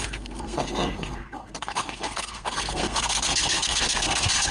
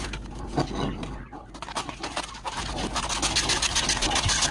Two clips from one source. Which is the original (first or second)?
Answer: second